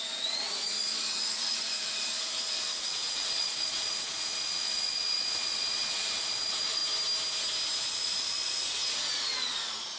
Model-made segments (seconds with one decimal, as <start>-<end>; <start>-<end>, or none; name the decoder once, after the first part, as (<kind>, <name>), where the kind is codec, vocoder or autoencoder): 0.0-6.8 (vocoder, Vocos); 7.9-10.0